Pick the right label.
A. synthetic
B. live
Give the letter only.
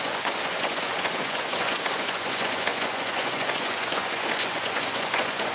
A